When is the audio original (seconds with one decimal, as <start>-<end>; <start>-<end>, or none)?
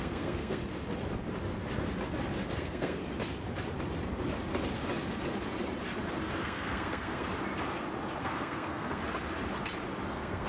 0.6-2.6; 3.0-6.4; 7.3-8.2; 9.0-10.1